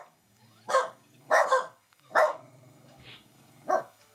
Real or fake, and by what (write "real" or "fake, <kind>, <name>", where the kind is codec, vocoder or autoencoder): fake, codec, DAC